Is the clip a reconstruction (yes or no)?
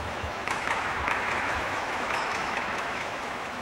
yes